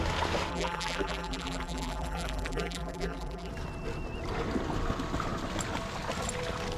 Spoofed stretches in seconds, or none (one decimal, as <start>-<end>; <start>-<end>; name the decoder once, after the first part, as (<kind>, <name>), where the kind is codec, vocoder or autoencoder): 0.5-3.5 (vocoder, BigVGAN v2)